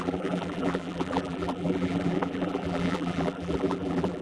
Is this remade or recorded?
remade